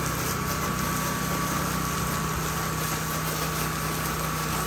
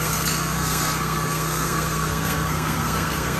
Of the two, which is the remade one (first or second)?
second